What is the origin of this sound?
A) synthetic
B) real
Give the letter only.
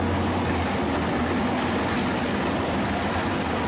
B